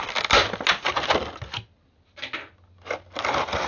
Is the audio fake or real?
real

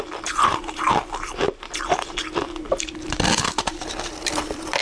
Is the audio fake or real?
fake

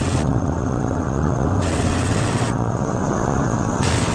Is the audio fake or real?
fake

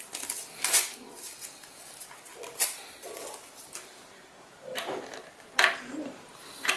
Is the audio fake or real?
real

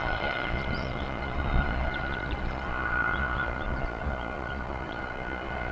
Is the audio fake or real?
fake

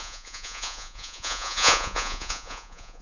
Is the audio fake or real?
fake